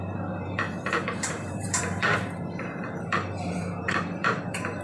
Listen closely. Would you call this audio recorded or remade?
remade